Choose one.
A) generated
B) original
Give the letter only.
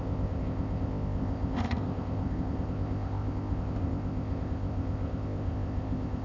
A